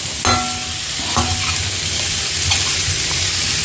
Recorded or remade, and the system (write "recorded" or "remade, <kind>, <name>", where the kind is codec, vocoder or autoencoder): recorded